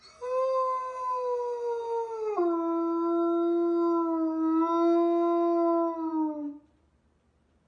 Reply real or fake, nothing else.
real